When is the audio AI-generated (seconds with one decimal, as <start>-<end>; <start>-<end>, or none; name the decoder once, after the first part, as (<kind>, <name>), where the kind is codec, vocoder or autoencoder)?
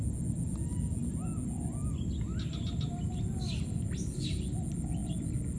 none